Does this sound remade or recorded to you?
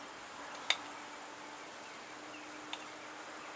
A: recorded